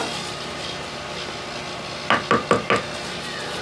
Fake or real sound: real